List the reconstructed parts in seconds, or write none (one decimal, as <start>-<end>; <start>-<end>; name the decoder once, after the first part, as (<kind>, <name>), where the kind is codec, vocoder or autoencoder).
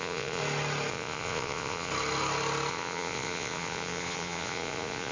0.0-0.4 (vocoder, Vocos); 0.9-1.9; 2.7-5.1